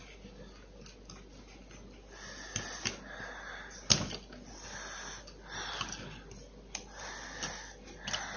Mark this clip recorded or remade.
recorded